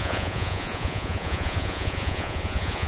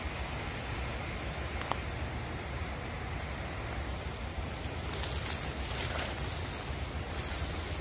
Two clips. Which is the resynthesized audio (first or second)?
first